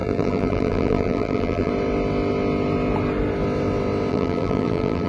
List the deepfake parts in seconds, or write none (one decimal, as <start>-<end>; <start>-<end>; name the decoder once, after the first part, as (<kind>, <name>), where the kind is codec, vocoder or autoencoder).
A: 0.0-1.7 (vocoder, BigVGAN v2); 4.1-5.1